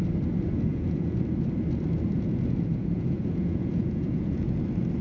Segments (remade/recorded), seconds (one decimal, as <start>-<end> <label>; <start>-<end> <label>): 0.0-0.7 recorded; 0.7-1.2 remade; 1.2-2.7 recorded; 2.7-4.6 remade; 4.6-5.0 recorded